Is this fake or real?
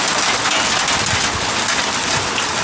real